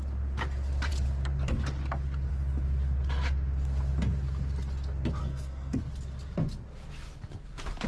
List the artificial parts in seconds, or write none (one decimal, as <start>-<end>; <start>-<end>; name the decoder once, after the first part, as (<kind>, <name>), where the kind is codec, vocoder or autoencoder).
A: 5.2-5.8 (codec, SNAC)